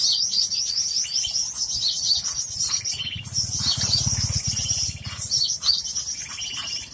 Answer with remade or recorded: recorded